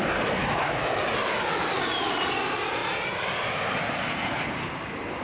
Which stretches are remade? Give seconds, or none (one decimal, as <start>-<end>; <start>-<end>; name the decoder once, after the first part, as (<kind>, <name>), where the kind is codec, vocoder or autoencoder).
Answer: 0.4-1.0 (autoencoder, DAC-VAE)